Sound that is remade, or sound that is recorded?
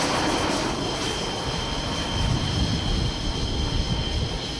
recorded